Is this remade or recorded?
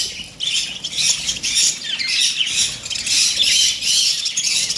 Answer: recorded